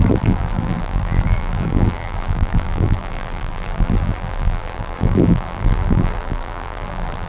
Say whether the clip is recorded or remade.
remade